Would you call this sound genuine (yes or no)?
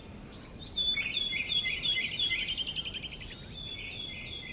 yes